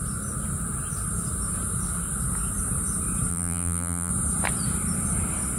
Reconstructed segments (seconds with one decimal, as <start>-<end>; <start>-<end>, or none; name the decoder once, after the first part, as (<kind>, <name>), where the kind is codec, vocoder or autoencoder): 3.3-4.1 (vocoder, BigVGAN v2)